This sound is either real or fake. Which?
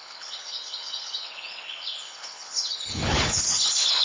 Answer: fake